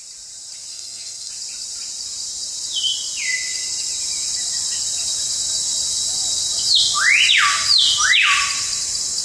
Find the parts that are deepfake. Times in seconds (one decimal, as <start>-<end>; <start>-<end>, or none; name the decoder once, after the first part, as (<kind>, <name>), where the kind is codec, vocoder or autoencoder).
0.7-1.3 (codec, SNAC)